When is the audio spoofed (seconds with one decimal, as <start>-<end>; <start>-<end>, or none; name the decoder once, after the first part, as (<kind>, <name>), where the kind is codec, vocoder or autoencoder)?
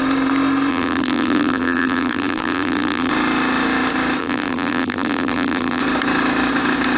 0.7-3.1 (vocoder, BigVGAN v2); 4.2-5.8